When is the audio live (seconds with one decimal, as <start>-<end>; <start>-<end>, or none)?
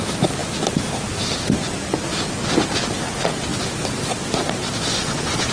0.0-4.9